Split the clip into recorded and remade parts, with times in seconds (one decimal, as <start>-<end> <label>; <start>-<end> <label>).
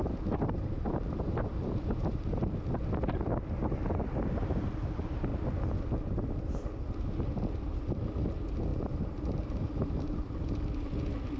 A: 0.0-2.4 remade; 2.4-8.7 recorded; 8.7-10.4 remade; 10.4-11.4 recorded